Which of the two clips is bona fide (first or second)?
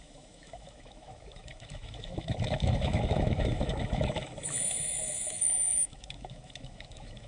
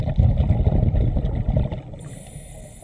second